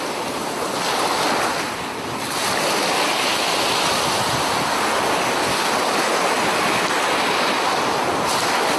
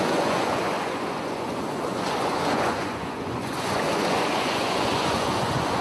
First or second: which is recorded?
first